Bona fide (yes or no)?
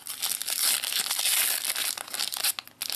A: yes